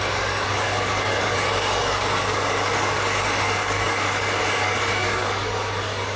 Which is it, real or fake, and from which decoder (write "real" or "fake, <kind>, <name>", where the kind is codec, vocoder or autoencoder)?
fake, codec, DAC